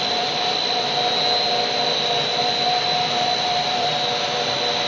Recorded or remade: remade